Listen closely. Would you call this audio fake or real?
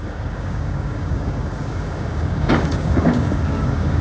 fake